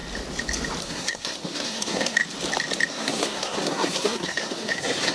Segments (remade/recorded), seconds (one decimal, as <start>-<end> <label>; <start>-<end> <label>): 0.0-0.8 recorded; 0.8-2.2 remade; 2.2-2.9 recorded; 2.9-5.1 remade